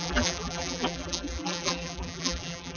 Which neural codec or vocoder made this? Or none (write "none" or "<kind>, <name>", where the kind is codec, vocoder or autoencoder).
vocoder, BigVGAN v2